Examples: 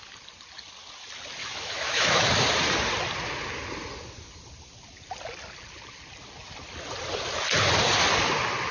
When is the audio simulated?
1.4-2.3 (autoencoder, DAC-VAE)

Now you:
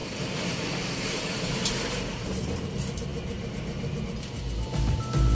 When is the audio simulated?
0.0-2.7 (vocoder, BigVGAN v2)

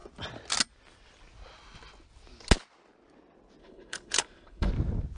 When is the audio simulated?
3.6-4.7 (codec, HILCodec)